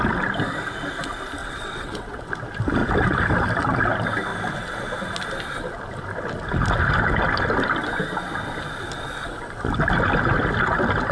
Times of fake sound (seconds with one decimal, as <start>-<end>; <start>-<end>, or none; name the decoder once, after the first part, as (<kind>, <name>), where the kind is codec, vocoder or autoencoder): 1.4-2.3 (vocoder, WaveNeXt)